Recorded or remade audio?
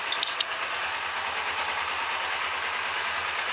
recorded